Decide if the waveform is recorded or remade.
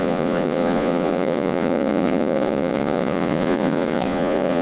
remade